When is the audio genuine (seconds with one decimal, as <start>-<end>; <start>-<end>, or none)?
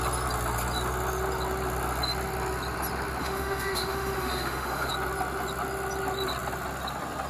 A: 0.0-3.2; 4.9-7.3